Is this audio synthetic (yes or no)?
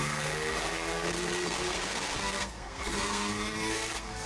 yes